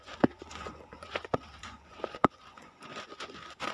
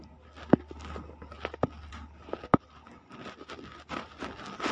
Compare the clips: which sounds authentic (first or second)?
second